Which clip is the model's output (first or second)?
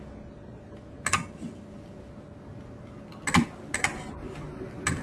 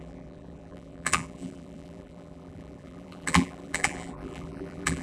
second